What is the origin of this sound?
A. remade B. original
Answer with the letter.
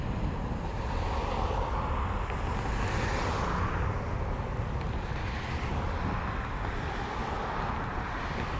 B